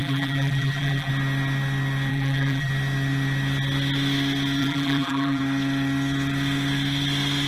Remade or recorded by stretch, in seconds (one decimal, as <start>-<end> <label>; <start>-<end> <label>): 0.0-1.1 remade; 1.1-2.1 recorded; 2.1-2.7 remade; 2.7-4.6 recorded; 4.6-5.4 remade; 5.4-7.5 recorded